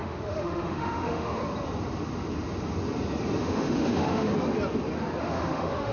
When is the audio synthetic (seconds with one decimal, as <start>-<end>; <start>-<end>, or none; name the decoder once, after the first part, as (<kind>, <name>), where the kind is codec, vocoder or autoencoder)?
0.0-1.4 (autoencoder, DAC-VAE); 3.4-4.3; 5.2-5.9